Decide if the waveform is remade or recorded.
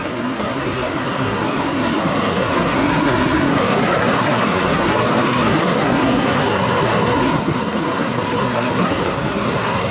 remade